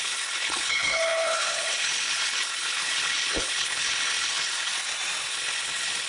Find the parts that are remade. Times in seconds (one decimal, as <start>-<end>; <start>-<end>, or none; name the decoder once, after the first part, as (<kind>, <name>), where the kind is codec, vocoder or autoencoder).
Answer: 0.0-4.7 (codec, HILCodec); 5.3-6.1